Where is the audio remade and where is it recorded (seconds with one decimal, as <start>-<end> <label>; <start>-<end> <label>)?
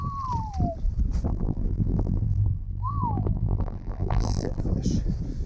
0.0-1.3 recorded; 1.3-4.6 remade; 4.6-5.5 recorded